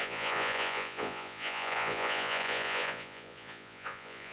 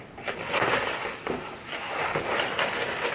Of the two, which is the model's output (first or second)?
first